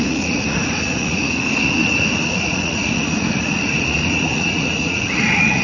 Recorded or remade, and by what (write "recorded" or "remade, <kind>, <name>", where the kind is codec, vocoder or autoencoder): remade, vocoder, Vocos